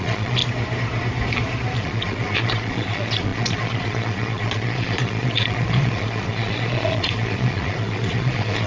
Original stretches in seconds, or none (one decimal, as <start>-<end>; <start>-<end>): 0.4-1.8